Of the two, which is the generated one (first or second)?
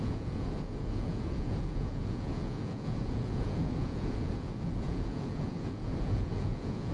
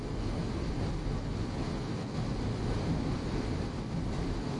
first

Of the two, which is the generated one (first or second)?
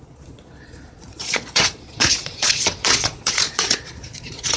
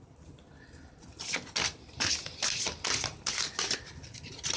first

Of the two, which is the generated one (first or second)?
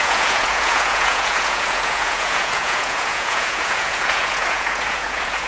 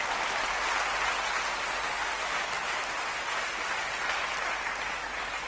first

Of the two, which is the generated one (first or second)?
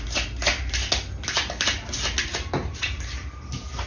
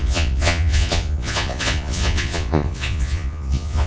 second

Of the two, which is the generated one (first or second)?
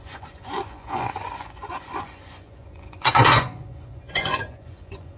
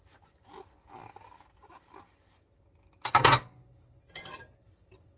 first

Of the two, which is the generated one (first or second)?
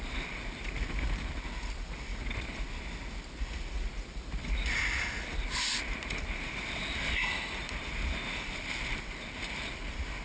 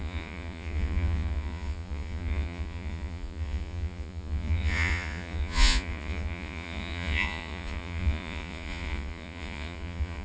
second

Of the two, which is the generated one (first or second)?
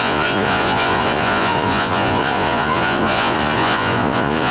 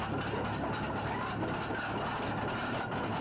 first